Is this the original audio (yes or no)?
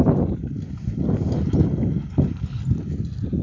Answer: yes